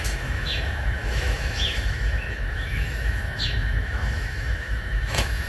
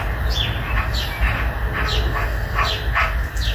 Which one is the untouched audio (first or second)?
second